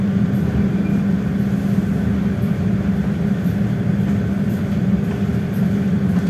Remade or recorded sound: recorded